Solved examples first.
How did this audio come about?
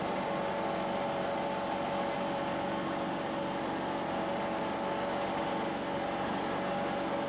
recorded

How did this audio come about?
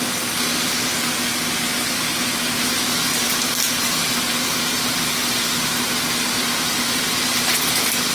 recorded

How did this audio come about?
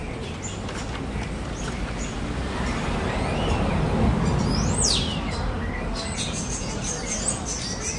recorded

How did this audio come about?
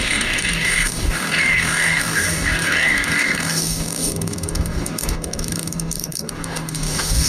remade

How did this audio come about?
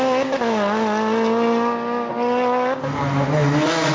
recorded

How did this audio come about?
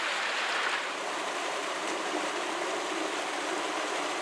recorded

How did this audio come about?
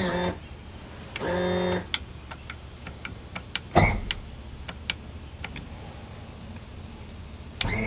recorded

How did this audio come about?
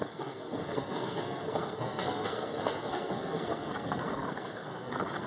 remade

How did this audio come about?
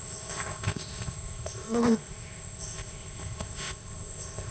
remade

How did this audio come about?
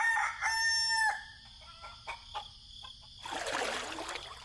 recorded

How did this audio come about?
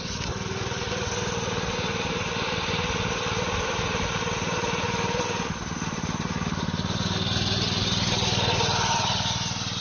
recorded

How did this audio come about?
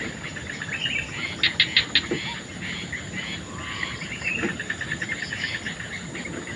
recorded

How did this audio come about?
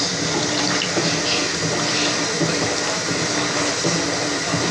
recorded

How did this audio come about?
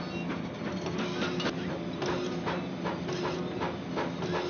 recorded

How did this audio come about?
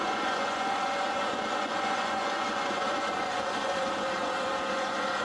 remade